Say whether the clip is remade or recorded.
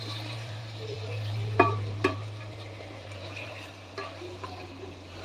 remade